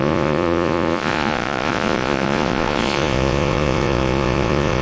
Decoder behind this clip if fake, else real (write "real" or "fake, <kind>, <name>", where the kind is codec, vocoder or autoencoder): fake, vocoder, Vocos